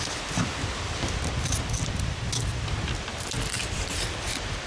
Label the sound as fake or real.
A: real